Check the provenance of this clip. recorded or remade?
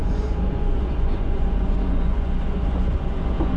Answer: remade